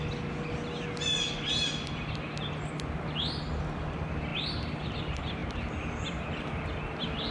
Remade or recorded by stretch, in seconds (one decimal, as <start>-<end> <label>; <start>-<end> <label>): 0.0-7.3 recorded